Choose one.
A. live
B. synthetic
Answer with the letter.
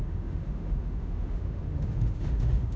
B